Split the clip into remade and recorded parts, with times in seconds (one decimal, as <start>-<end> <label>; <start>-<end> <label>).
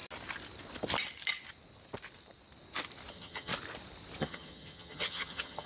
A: 0.0-3.1 recorded; 3.1-3.5 remade; 3.5-4.2 recorded; 4.2-5.7 remade